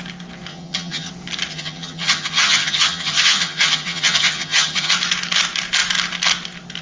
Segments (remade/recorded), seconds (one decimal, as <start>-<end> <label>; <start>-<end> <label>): 0.0-0.5 recorded; 0.5-1.1 remade; 1.1-1.5 recorded; 1.5-4.9 remade; 4.9-6.8 recorded